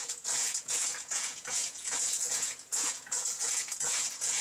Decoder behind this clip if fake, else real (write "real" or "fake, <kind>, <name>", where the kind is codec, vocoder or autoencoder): fake, vocoder, Vocos